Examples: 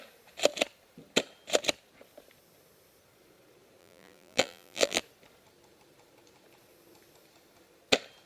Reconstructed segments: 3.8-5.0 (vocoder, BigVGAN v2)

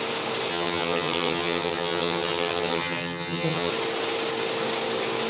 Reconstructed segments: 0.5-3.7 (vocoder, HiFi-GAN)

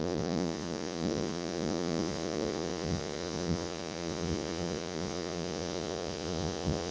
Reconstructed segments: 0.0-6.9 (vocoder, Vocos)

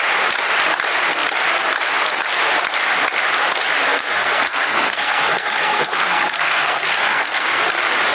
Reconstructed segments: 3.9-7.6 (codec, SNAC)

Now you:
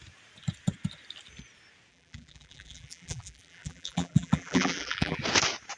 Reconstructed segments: 1.9-5.2 (vocoder, BigVGAN v2)

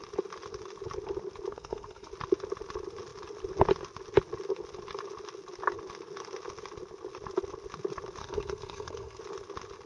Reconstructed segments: 1.5-2.1 (codec, SNAC); 8.2-9.2

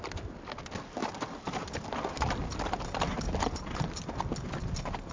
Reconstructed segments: none